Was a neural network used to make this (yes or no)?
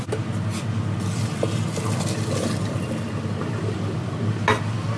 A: no